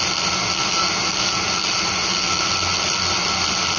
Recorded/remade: recorded